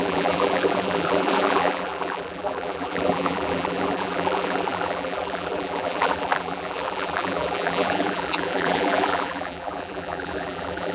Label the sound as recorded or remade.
remade